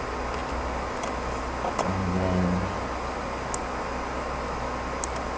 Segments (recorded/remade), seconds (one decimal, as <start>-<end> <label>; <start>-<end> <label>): 0.0-5.4 recorded